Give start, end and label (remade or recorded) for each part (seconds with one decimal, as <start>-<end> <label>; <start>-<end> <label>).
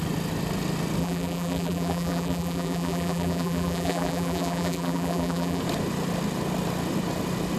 0.0-1.0 recorded; 1.0-5.6 remade; 5.6-7.6 recorded